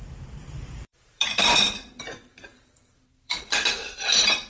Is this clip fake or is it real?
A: fake